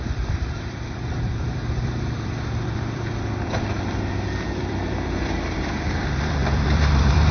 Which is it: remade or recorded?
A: remade